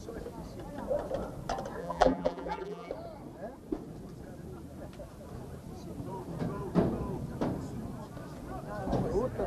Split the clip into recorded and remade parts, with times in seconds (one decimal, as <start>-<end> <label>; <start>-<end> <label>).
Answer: 0.0-1.8 recorded; 1.8-2.9 remade; 2.9-9.5 recorded